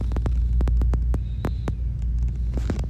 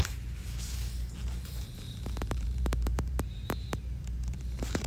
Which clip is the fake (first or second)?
second